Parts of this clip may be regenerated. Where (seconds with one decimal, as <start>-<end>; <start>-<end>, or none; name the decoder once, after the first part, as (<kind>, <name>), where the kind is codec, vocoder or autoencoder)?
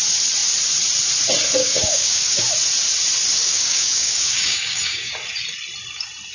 1.6-2.3 (codec, DAC); 3.3-5.1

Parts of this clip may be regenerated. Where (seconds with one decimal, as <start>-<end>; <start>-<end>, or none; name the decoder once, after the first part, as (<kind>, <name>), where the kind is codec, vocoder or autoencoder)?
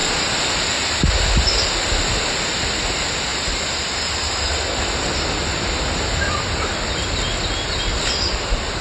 none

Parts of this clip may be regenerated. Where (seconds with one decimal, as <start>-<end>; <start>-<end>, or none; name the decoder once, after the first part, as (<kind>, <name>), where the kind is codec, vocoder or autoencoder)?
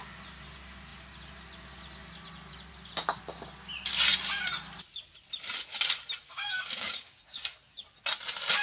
6.2-7.6 (codec, DAC)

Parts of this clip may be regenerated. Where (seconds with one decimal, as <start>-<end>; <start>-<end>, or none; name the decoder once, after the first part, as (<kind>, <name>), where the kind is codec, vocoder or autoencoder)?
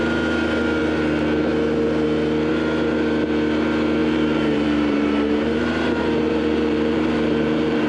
4.0-7.9 (vocoder, BigVGAN v2)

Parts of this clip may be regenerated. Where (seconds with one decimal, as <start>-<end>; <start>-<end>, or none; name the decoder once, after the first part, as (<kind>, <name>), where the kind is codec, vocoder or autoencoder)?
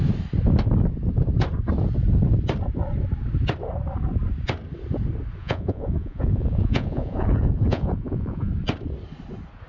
5.4-8.5 (vocoder, Vocos)